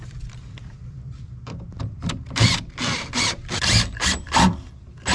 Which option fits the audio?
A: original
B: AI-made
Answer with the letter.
B